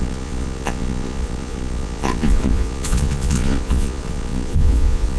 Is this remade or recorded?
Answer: remade